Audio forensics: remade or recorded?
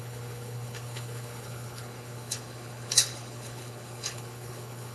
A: remade